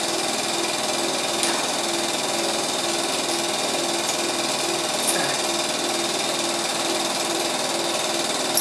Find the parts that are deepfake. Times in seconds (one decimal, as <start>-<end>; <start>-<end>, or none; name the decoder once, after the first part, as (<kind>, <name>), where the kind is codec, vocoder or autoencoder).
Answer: 6.7-7.5 (vocoder, BigVGAN v2)